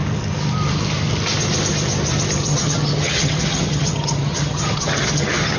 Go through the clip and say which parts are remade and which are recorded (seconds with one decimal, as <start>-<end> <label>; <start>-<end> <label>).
0.0-2.4 recorded; 2.4-5.6 remade